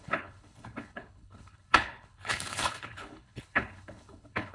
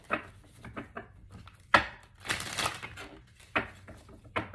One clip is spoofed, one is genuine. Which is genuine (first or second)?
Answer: second